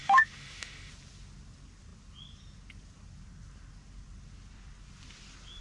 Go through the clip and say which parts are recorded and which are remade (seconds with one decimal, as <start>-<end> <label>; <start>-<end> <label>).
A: 0.0-0.9 remade; 0.9-5.6 recorded